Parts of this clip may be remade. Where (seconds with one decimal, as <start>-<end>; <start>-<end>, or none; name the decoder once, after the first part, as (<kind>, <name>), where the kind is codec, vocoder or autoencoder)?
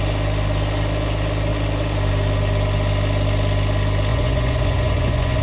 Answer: 4.1-5.4 (vocoder, Vocos)